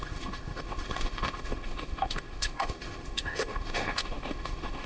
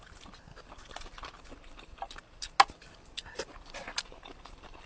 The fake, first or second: first